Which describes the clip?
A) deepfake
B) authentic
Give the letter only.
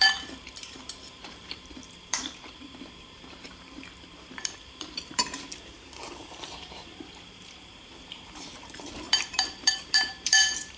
A